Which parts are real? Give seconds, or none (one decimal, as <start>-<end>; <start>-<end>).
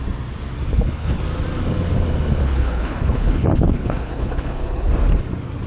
0.0-0.7; 1.2-2.4; 4.9-5.7